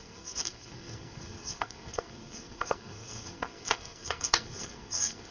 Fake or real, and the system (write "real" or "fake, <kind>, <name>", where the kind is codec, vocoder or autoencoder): fake, codec, SNAC